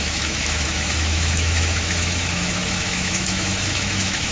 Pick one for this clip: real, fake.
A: fake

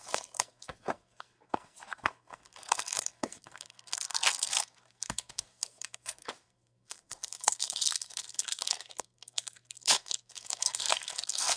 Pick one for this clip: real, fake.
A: fake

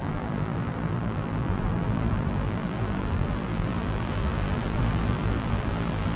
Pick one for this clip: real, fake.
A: fake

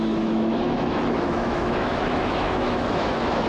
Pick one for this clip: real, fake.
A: fake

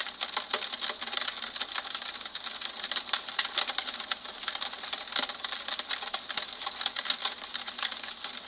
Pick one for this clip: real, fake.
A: real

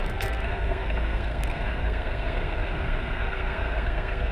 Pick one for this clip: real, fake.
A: fake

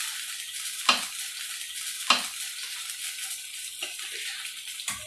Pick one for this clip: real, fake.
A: real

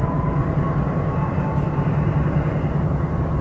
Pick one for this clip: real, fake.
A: real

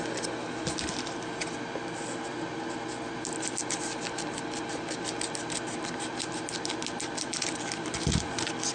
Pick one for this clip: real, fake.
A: real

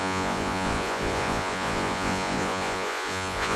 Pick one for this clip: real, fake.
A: fake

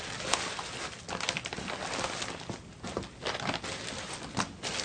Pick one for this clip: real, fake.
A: real